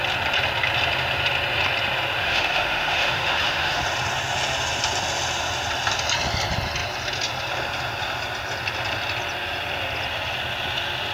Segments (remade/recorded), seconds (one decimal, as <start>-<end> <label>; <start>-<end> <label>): 0.0-2.2 recorded; 2.2-3.8 remade; 3.8-11.1 recorded